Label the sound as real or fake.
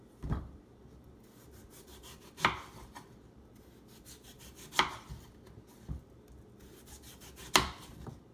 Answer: real